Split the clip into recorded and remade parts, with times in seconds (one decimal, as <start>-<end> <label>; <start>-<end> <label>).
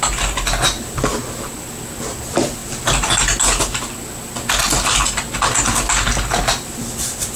0.0-7.4 recorded